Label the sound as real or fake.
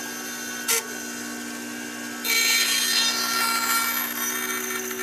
real